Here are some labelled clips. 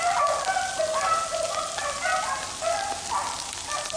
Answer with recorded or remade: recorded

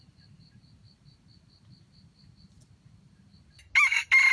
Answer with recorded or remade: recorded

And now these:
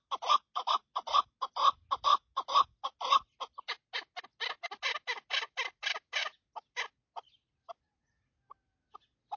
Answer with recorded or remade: recorded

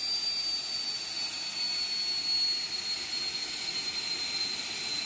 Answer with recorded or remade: recorded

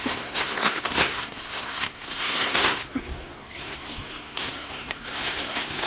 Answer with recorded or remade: remade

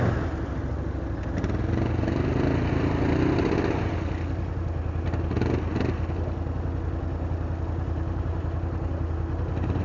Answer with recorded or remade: recorded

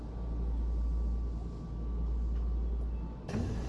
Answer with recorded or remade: recorded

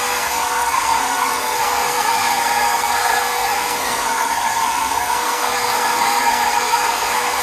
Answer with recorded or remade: remade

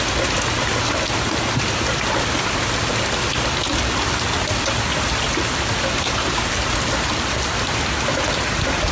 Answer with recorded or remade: recorded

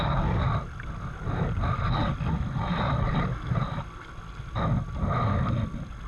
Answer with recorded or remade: recorded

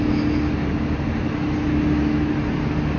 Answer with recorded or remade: recorded